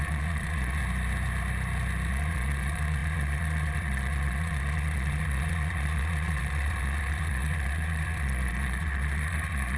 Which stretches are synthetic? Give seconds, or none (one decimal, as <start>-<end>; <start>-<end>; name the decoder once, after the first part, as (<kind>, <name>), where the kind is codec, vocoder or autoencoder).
0.0-0.8 (vocoder, Vocos); 2.1-9.8